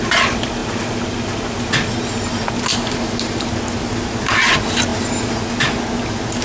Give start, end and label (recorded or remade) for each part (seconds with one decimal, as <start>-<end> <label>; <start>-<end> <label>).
0.0-2.7 recorded; 2.7-3.5 remade; 3.5-6.4 recorded

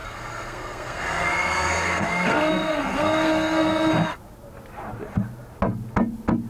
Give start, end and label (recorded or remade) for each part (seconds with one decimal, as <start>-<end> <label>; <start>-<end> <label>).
0.0-3.9 remade; 3.9-6.5 recorded

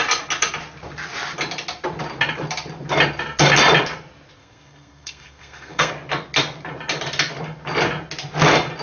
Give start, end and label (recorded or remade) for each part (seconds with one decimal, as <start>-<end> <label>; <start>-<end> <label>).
0.0-4.4 recorded; 4.4-5.9 remade; 5.9-8.8 recorded

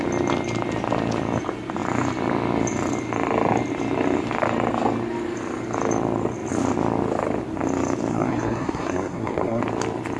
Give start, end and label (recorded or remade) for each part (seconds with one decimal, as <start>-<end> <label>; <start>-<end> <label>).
0.0-8.1 recorded; 8.1-9.6 remade; 9.6-10.2 recorded